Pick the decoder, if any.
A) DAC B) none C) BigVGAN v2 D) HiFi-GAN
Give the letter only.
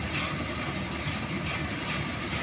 B